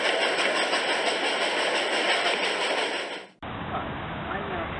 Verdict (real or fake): real